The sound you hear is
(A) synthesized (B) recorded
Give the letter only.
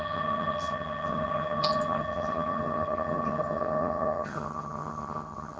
A